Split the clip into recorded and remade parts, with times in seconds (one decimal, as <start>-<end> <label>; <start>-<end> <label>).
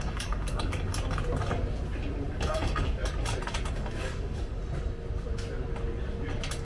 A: 0.0-0.9 remade; 0.9-2.3 recorded; 2.3-3.0 remade; 3.0-3.7 recorded; 3.7-4.6 remade; 4.6-6.6 recorded